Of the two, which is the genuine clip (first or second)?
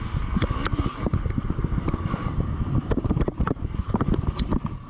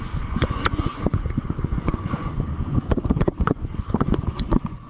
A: first